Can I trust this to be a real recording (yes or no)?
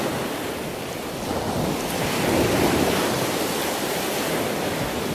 yes